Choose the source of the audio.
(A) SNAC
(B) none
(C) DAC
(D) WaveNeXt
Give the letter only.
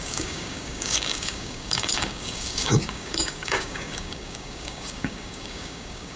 C